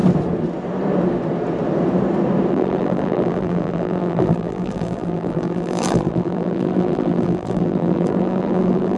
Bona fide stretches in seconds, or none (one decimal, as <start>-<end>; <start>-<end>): 0.0-2.5